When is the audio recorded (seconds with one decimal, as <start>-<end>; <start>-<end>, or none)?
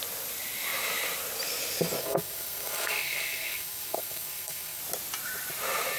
0.0-2.0; 4.8-6.0